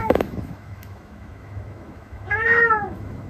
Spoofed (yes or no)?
yes